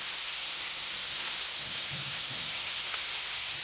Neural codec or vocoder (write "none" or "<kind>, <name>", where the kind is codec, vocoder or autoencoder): codec, SNAC